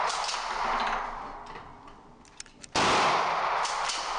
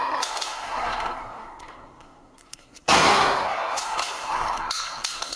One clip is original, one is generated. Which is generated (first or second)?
second